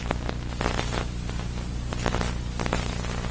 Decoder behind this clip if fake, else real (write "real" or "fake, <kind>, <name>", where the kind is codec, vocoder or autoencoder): real